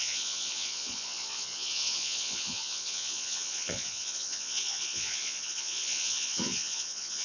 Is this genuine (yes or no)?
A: no